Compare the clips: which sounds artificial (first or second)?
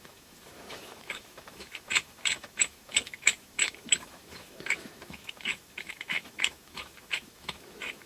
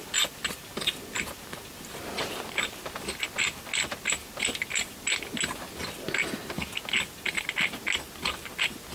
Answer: first